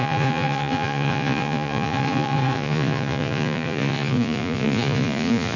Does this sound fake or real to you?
fake